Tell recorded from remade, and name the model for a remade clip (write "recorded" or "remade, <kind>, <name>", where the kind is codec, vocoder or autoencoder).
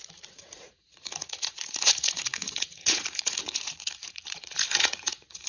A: remade, vocoder, Vocos